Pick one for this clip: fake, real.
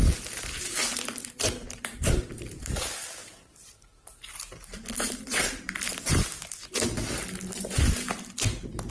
real